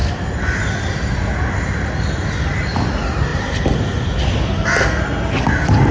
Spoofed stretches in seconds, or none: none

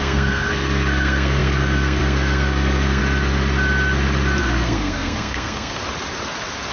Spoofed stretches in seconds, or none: 0.0-3.0; 4.4-5.8

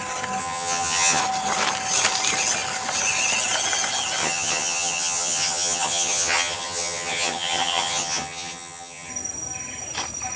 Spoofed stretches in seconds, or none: 0.4-1.2; 4.2-9.1

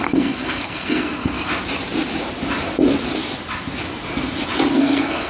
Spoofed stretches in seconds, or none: 0.0-1.5; 4.7-5.3

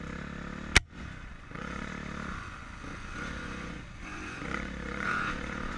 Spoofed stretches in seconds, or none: 0.8-1.9; 2.3-5.8

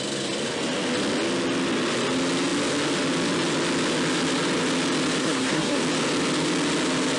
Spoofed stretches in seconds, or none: 5.2-5.8